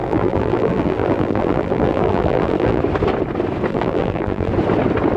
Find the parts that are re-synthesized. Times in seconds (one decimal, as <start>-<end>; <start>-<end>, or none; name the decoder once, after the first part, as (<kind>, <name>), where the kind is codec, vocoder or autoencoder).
0.0-2.8 (vocoder, BigVGAN v2); 3.7-4.5